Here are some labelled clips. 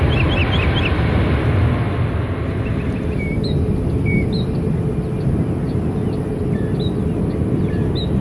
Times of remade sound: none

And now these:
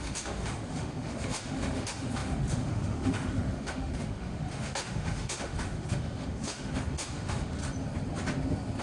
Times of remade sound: 0.0-7.6 (autoencoder, DAC-VAE)

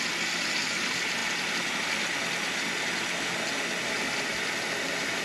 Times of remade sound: none

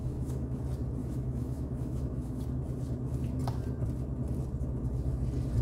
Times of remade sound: 0.0-0.6 (autoencoder, DAC-VAE); 1.0-2.4

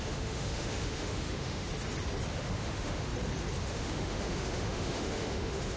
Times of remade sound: 0.0-1.7 (autoencoder, DAC-VAE); 2.3-3.1; 3.6-5.8

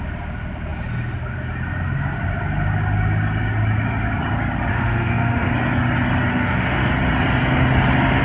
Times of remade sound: 4.7-5.5 (autoencoder, DAC-VAE); 6.3-6.9